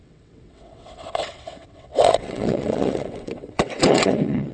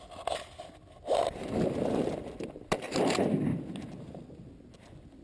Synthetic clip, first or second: first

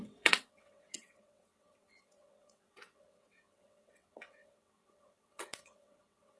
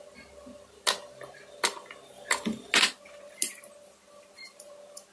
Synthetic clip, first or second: first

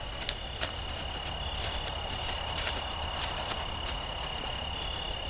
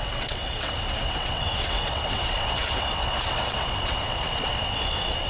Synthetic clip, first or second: second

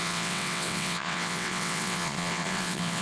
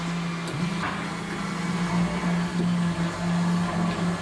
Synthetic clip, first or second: first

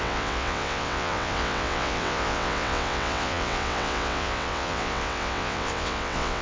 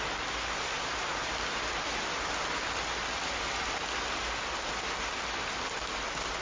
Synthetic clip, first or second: first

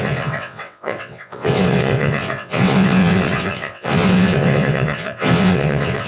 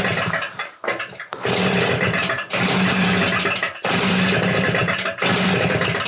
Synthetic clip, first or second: first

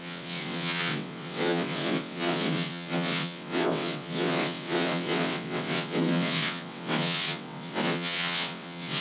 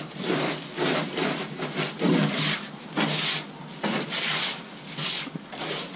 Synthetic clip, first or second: first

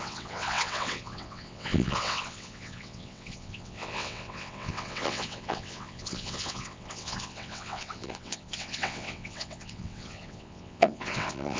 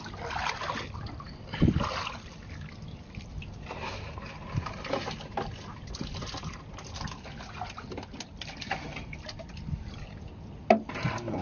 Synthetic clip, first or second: first